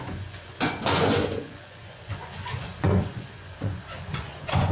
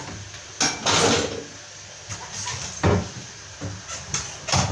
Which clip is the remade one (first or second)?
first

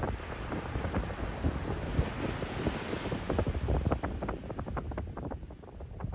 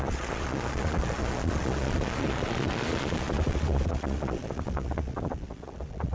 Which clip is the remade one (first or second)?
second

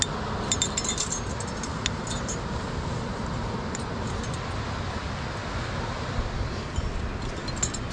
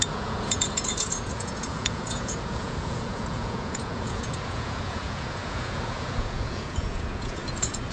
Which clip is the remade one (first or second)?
second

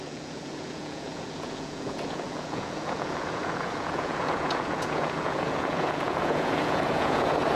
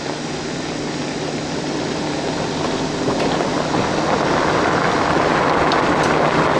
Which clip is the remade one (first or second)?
first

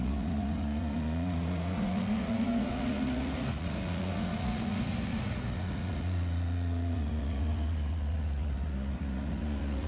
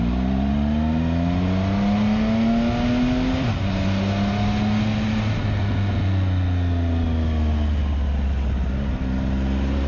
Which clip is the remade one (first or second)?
first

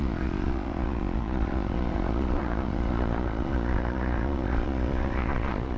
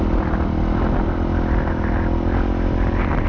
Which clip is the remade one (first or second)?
first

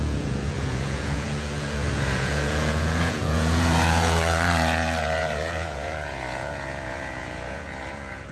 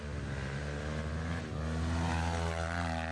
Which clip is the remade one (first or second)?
first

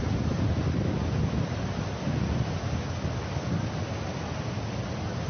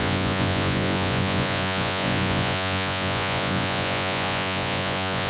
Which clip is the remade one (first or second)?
second